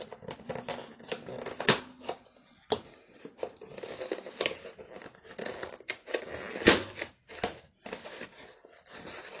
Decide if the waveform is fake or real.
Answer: real